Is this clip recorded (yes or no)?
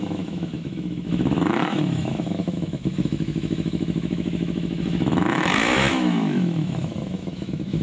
no